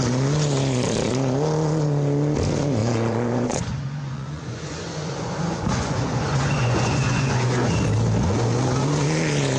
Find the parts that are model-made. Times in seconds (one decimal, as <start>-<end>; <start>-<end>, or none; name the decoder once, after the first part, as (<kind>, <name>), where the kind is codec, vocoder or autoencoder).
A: 2.8-7.7 (vocoder, Vocos)